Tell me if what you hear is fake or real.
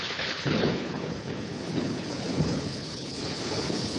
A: fake